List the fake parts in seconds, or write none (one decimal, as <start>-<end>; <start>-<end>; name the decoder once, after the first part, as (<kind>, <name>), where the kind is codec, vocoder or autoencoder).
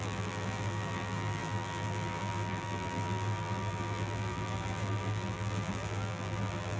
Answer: 0.0-6.8 (vocoder, BigVGAN v2)